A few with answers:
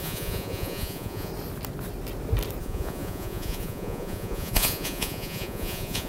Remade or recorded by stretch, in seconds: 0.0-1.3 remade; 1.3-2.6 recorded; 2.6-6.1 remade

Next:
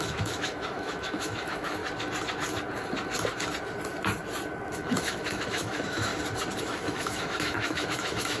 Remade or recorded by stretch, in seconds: 0.0-1.8 remade; 1.8-4.7 recorded; 4.7-6.1 remade; 6.1-6.6 recorded; 6.6-8.4 remade

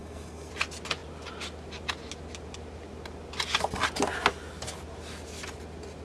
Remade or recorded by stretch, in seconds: 0.0-0.5 remade; 0.5-6.0 recorded

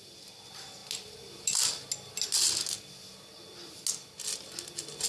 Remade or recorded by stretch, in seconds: 0.0-5.1 recorded